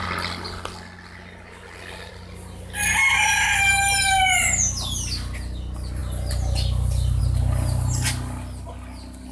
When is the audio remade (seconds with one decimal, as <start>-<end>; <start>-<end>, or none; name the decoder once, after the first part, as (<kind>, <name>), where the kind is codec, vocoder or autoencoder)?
none